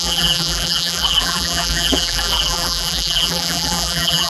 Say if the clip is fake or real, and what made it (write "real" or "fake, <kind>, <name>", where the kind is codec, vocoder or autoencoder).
fake, vocoder, BigVGAN v2